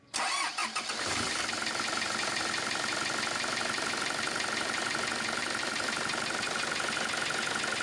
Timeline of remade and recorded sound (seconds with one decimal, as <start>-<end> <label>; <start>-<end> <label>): 0.0-5.4 recorded; 5.4-6.6 remade; 6.6-7.8 recorded